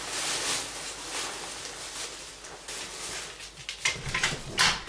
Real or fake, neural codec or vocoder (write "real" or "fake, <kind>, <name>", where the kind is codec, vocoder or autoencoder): real